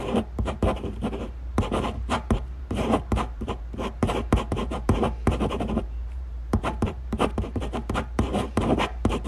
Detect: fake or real fake